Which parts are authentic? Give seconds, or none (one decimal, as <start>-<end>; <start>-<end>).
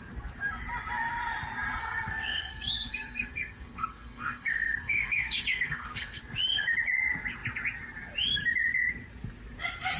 0.0-1.8; 6.2-10.0